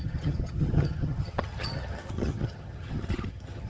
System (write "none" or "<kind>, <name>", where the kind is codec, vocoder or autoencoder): vocoder, HiFi-GAN